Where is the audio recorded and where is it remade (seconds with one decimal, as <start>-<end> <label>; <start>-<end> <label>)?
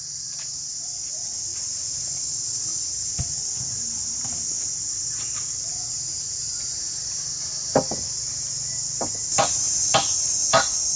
0.0-11.0 recorded